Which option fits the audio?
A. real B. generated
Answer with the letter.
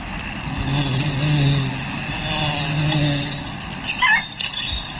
A